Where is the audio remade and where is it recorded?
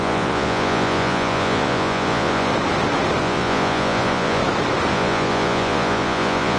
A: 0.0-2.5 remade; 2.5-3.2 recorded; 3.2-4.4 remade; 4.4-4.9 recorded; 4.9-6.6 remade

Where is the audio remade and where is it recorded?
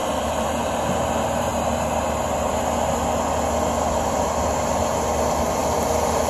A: 0.0-0.5 remade; 0.5-6.3 recorded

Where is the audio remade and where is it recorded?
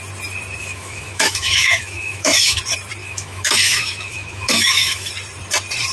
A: 0.0-0.6 recorded; 0.6-2.6 remade; 2.6-3.0 recorded; 3.0-5.1 remade; 5.1-5.9 recorded